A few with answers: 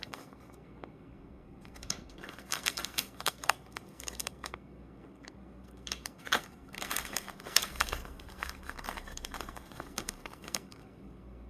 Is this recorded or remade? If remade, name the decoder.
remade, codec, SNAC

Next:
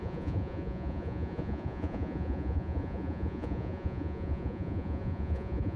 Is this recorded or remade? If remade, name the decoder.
remade, vocoder, Vocos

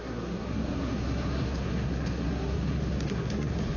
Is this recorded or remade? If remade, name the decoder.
remade, codec, SNAC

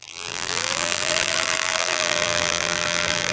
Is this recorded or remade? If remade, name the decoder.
remade, vocoder, BigVGAN v2